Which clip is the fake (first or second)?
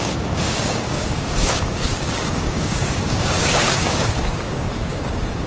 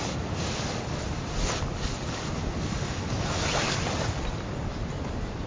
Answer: first